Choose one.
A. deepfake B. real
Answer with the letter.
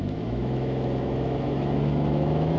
A